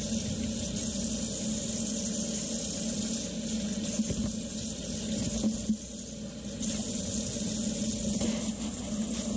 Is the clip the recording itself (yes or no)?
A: yes